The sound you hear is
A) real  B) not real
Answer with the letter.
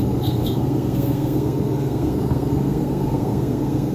B